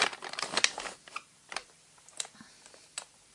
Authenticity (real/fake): real